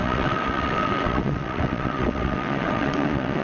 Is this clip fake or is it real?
fake